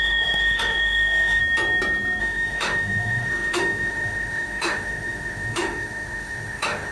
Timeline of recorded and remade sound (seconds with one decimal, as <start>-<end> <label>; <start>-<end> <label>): 0.0-1.4 remade; 1.4-2.2 recorded; 2.2-6.9 remade